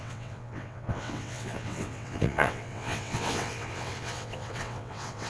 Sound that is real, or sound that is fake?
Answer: fake